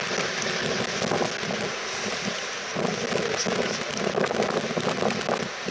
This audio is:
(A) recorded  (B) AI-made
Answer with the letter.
A